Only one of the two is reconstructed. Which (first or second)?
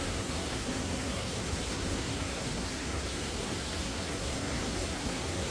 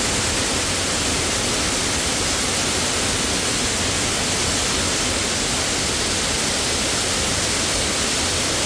first